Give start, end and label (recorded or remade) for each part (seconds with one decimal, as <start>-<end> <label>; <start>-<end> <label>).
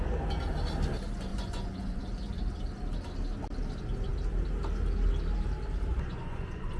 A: 0.0-1.3 recorded; 1.3-2.0 remade; 2.0-5.9 recorded; 5.9-6.8 remade